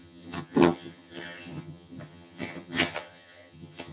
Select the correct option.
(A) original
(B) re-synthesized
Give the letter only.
B